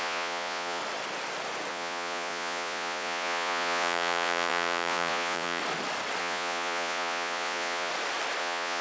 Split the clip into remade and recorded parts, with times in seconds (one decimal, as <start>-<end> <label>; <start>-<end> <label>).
0.0-0.8 remade; 0.8-1.7 recorded; 1.7-5.6 remade; 5.6-6.2 recorded; 6.2-7.9 remade; 7.9-8.4 recorded; 8.4-8.8 remade